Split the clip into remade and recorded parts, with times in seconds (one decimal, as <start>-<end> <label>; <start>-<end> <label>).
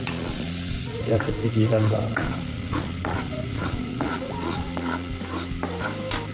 0.0-5.1 remade; 5.1-6.3 recorded